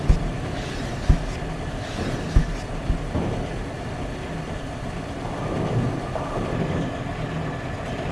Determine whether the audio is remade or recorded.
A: recorded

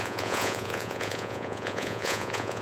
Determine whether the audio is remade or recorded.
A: remade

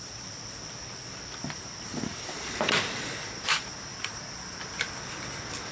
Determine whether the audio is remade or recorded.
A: remade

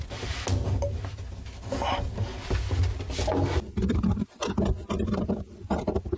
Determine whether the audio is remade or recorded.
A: recorded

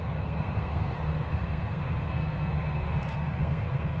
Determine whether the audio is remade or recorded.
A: remade